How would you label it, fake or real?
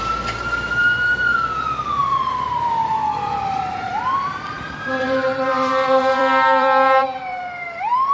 fake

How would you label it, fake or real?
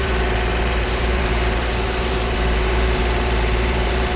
fake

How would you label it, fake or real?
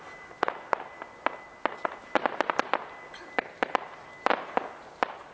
real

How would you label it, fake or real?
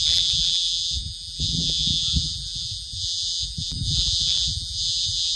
fake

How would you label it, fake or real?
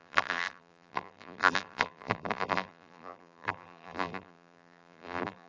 fake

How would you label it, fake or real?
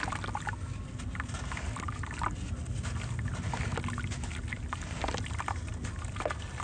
real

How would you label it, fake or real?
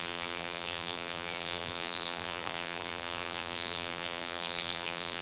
fake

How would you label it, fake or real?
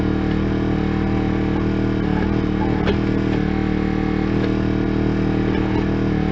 real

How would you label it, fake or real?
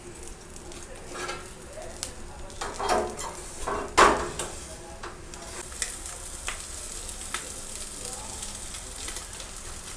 real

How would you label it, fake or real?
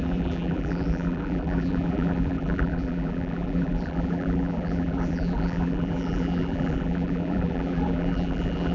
fake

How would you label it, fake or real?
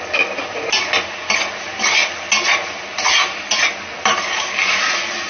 real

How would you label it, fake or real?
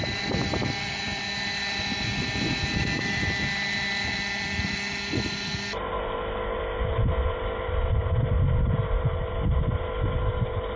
real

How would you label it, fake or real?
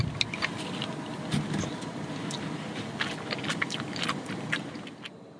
real